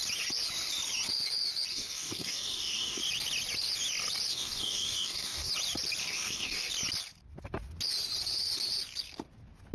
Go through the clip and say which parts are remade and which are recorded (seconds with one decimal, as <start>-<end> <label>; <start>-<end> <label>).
0.0-1.7 recorded; 1.7-3.0 remade; 3.0-4.3 recorded; 4.3-5.5 remade; 5.5-6.0 recorded; 6.0-6.7 remade; 6.7-9.7 recorded